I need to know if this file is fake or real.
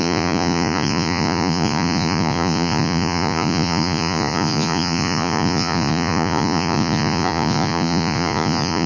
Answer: fake